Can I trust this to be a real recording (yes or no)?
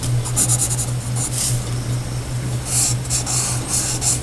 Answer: yes